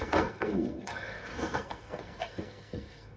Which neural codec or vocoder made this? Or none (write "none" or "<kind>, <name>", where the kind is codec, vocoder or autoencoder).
codec, SNAC